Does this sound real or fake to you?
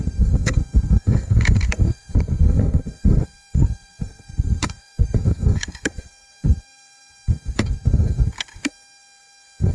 fake